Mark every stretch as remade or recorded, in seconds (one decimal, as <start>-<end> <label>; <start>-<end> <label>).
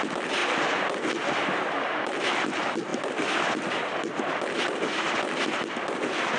0.0-6.4 recorded